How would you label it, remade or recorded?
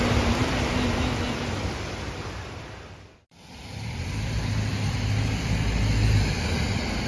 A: remade